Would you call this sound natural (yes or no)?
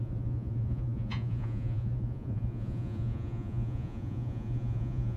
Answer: no